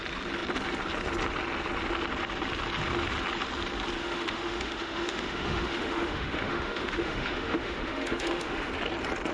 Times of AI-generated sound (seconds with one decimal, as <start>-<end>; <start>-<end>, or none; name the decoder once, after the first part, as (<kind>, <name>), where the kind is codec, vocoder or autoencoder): 4.0-8.7 (autoencoder, DAC-VAE)